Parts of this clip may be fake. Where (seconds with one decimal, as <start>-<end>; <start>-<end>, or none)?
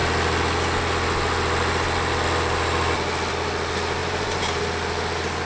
4.0-4.6